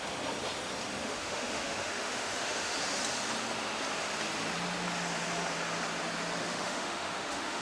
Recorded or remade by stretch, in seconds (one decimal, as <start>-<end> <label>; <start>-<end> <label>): 0.0-1.0 recorded; 1.0-2.8 remade; 2.8-6.4 recorded; 6.4-7.6 remade